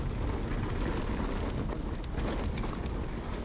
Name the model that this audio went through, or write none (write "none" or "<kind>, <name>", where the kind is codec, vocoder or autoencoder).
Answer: none